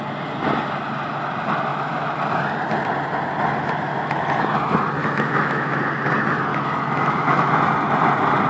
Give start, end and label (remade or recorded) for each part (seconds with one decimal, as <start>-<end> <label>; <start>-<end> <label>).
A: 0.0-1.7 recorded; 1.7-2.2 remade; 2.2-3.9 recorded; 3.9-4.4 remade; 4.4-5.0 recorded; 5.0-5.8 remade; 5.8-6.5 recorded; 6.5-7.5 remade; 7.5-8.5 recorded